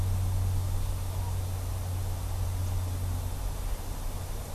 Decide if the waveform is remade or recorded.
recorded